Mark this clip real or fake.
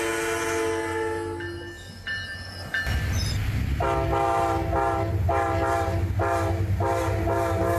real